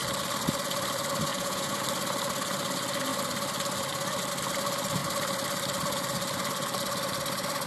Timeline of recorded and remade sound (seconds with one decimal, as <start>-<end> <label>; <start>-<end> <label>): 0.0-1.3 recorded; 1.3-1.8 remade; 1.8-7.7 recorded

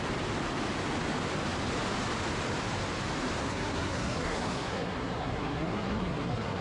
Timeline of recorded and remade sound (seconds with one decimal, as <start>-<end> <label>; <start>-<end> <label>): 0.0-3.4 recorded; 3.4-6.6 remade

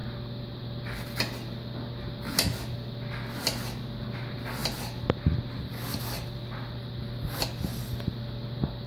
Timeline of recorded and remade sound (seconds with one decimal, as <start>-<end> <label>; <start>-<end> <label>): 0.0-8.9 recorded

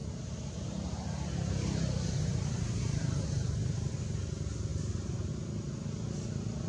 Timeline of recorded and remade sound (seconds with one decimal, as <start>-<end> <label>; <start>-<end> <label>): 0.0-4.0 remade; 4.0-4.7 recorded; 4.7-5.3 remade; 5.3-6.7 recorded

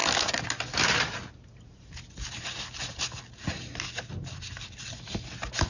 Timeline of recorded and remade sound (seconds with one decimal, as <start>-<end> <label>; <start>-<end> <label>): 0.0-5.7 recorded